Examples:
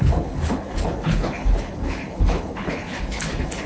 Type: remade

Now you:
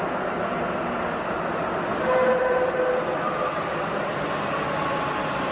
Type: recorded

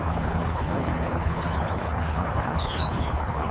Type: remade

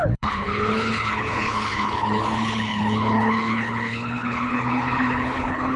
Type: remade